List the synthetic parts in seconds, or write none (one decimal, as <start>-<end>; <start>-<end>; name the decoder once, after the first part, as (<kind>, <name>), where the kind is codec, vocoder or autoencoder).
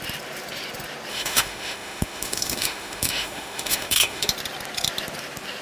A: 1.1-4.3 (autoencoder, DAC-VAE)